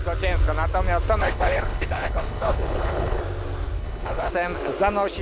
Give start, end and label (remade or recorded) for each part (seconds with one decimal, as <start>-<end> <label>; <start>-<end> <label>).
0.0-1.2 recorded; 1.2-3.2 remade; 3.2-3.8 recorded; 3.8-4.3 remade; 4.3-5.2 recorded

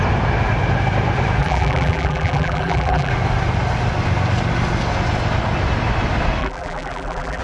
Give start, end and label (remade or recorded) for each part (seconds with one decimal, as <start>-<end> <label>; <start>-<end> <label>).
0.0-1.4 recorded; 1.4-3.1 remade; 3.1-6.4 recorded; 6.4-7.4 remade

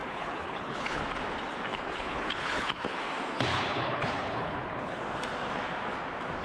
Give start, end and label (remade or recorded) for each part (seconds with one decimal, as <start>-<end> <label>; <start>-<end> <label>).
0.0-1.0 remade; 1.0-1.7 recorded; 1.7-3.0 remade; 3.0-3.5 recorded; 3.5-5.0 remade; 5.0-6.4 recorded

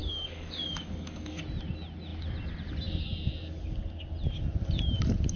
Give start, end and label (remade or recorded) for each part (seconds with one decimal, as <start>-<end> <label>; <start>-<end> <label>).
0.0-1.4 remade; 1.4-5.4 recorded

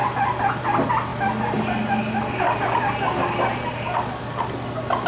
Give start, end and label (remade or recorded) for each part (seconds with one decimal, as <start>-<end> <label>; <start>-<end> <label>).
0.0-0.5 remade; 0.5-5.1 recorded

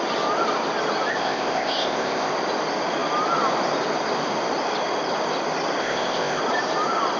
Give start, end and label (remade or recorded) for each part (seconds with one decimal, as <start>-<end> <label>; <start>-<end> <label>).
0.0-1.1 recorded; 1.1-2.3 remade; 2.3-5.8 recorded; 5.8-6.4 remade; 6.4-7.2 recorded

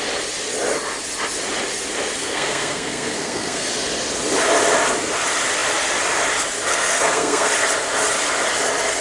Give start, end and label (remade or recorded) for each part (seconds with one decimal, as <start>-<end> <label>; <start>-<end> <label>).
0.0-2.2 recorded; 2.2-3.7 remade; 3.7-6.7 recorded; 6.7-7.5 remade; 7.5-9.0 recorded

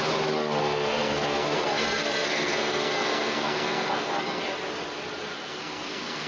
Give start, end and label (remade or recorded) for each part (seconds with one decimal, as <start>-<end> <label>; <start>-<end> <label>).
0.0-0.6 recorded; 0.6-4.4 remade; 4.4-5.3 recorded; 5.3-6.3 remade